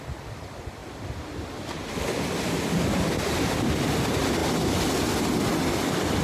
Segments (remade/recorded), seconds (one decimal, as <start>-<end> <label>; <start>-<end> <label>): 0.0-6.2 recorded